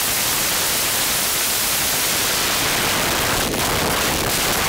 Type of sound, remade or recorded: recorded